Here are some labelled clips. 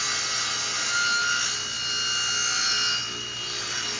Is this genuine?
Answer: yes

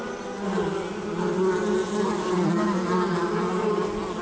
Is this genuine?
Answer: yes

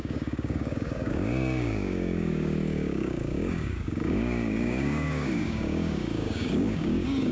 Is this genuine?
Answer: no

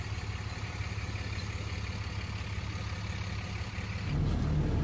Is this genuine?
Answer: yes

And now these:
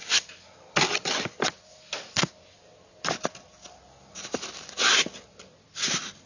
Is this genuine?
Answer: yes